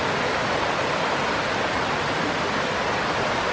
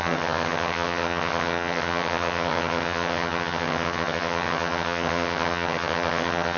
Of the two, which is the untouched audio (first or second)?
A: first